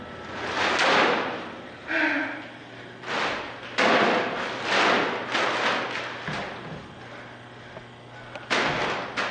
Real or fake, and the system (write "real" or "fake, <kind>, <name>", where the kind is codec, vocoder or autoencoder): real